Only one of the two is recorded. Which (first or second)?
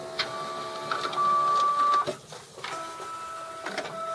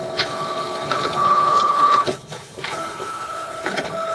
first